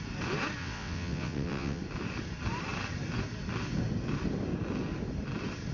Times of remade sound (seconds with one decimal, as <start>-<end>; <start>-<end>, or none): 0.6-1.8